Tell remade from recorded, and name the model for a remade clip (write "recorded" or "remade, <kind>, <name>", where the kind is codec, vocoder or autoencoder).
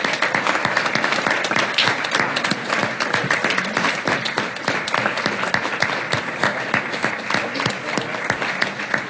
recorded